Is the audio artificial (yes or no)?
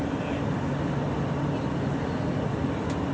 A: no